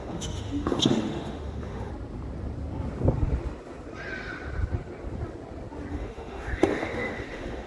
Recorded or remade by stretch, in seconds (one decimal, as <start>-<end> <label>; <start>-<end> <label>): 0.0-1.9 remade; 1.9-5.9 recorded; 5.9-7.7 remade